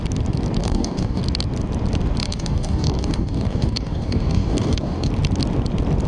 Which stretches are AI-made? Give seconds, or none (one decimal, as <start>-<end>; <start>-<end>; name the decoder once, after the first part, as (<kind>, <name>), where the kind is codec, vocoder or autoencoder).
0.6-1.2 (codec, DAC); 2.2-5.1

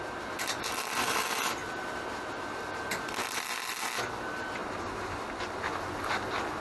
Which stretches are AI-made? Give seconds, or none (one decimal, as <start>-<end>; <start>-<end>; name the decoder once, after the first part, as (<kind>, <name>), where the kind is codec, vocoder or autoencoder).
none

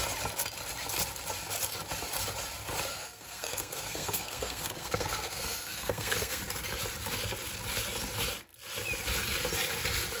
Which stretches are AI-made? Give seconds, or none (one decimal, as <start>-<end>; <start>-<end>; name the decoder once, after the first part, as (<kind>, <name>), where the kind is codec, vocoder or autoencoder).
2.9-6.4 (codec, SNAC)